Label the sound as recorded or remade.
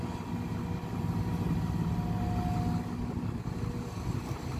recorded